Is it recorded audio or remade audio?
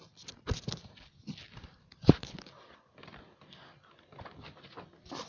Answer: recorded